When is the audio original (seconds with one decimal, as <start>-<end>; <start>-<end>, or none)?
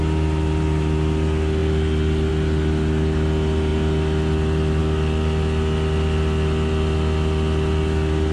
0.0-8.3